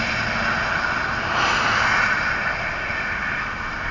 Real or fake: real